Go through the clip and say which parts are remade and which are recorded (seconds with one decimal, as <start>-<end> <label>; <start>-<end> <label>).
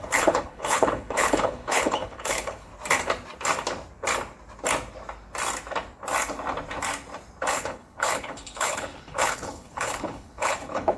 0.0-2.7 remade; 2.7-7.5 recorded; 7.5-11.0 remade